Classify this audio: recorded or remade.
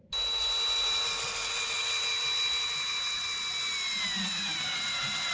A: recorded